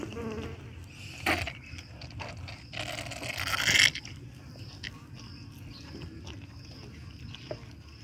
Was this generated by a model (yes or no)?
no